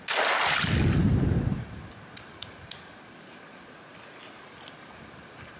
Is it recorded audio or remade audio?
recorded